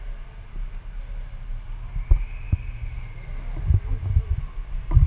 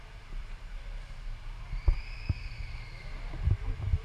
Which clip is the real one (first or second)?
first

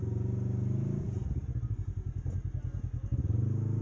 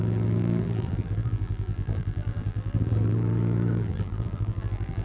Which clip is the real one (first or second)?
first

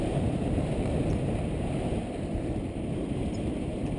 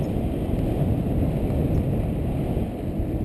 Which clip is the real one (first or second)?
second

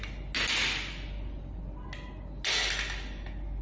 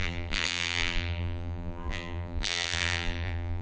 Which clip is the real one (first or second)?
first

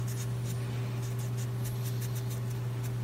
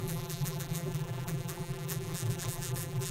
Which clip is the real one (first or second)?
first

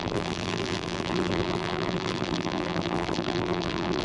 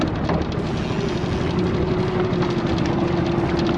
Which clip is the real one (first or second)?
second